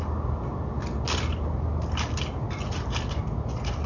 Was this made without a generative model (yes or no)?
yes